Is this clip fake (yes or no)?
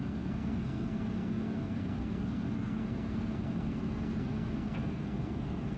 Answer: yes